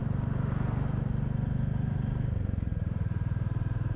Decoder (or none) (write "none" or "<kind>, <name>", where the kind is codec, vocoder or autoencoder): vocoder, BigVGAN v2